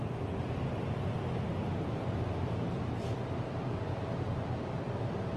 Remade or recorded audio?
recorded